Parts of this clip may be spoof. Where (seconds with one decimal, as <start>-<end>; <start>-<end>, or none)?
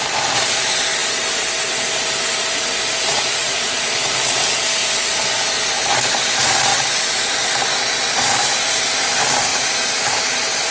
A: 3.1-3.9; 9.5-10.0